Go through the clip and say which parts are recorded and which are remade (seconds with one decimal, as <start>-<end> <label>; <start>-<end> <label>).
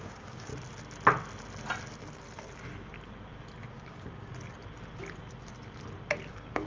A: 0.0-0.5 remade; 0.5-3.7 recorded; 3.7-4.3 remade; 4.3-6.3 recorded; 6.3-6.7 remade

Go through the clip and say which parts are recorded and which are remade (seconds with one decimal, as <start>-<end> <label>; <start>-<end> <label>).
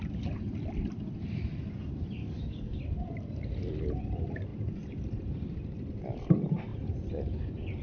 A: 0.0-2.2 recorded; 2.2-2.8 remade; 2.8-7.8 recorded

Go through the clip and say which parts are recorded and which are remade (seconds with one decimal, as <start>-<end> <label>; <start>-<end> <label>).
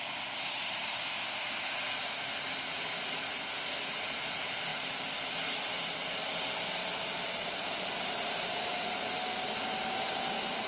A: 0.0-10.7 recorded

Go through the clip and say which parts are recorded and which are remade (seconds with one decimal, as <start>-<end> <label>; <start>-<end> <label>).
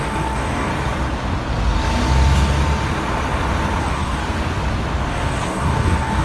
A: 0.0-0.7 remade; 0.7-3.8 recorded; 3.8-4.2 remade; 4.2-5.1 recorded; 5.1-6.2 remade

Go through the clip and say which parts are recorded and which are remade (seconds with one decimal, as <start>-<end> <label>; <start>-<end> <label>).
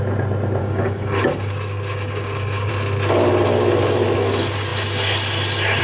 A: 0.0-0.6 recorded; 0.6-2.7 remade; 2.7-5.8 recorded